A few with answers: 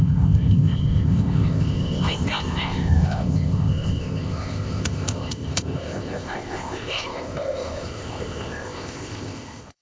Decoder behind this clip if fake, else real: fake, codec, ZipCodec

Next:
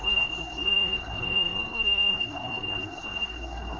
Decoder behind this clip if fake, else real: fake, codec, SNAC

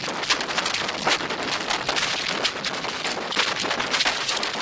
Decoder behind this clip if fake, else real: real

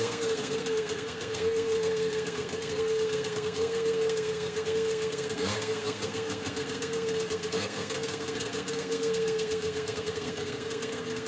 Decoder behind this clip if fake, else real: fake, codec, SNAC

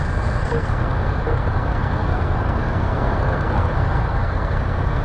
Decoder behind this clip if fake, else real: fake, codec, SNAC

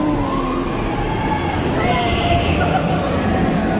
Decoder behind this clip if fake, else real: real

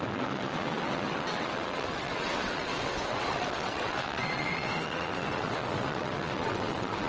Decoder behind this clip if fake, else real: fake, vocoder, WaveNeXt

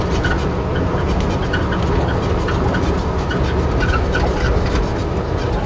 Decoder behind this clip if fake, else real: real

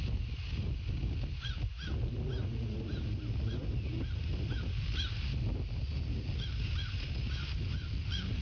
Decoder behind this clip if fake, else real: fake, vocoder, BigVGAN v2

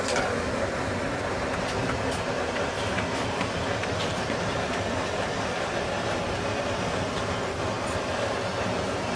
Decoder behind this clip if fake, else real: real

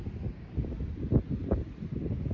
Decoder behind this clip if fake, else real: real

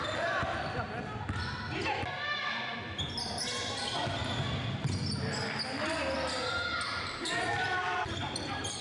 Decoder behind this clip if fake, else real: real